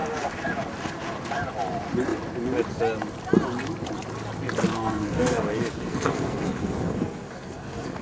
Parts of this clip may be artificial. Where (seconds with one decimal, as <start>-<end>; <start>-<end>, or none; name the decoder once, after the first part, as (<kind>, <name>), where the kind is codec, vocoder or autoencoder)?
4.7-8.0 (codec, SNAC)